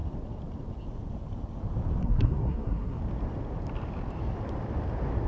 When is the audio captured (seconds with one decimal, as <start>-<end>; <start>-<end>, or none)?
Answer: 0.0-2.0; 3.0-5.3

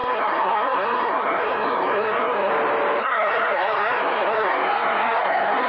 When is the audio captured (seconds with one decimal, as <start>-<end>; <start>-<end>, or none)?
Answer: 2.5-3.0

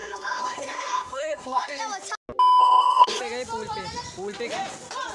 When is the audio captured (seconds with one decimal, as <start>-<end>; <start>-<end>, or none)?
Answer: 1.8-2.6; 3.2-5.1

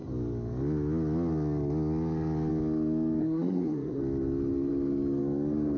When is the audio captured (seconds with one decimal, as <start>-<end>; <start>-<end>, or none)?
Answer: 0.0-3.2; 4.0-5.8

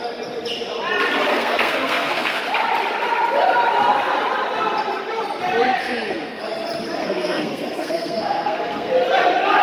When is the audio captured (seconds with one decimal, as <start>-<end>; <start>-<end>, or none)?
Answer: 0.0-1.3; 2.4-5.8; 6.4-7.0; 8.9-9.6